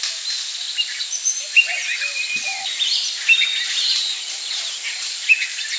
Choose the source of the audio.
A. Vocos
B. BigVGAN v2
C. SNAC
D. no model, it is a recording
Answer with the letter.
D